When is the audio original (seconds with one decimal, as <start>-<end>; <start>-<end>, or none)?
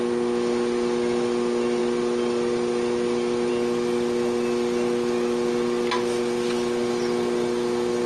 0.0-8.1